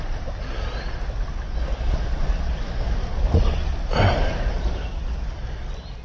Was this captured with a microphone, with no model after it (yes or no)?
yes